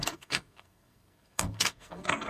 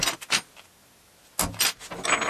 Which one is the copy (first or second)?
first